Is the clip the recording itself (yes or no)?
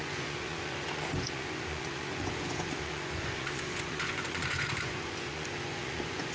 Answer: no